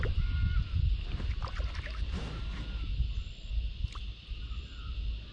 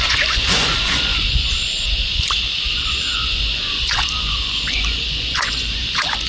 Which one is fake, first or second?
second